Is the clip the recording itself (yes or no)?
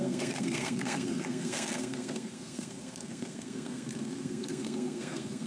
no